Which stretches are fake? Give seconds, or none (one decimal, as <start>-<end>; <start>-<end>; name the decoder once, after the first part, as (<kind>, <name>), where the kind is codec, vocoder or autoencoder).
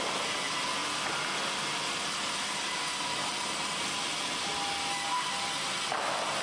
none